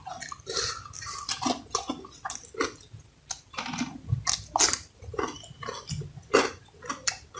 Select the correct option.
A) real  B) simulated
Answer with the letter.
A